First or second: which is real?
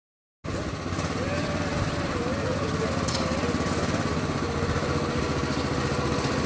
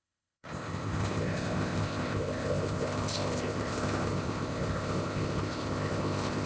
first